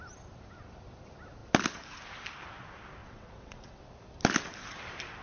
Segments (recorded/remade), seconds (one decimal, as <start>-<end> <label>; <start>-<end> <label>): 0.0-3.0 recorded; 3.0-3.8 remade; 3.8-5.2 recorded